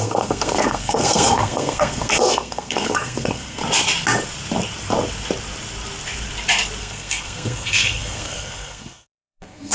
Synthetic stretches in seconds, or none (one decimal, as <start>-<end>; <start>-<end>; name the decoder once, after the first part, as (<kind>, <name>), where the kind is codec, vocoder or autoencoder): 0.0-3.6 (codec, SNAC); 6.8-9.7